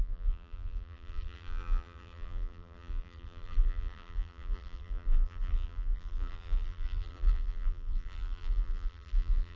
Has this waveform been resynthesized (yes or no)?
yes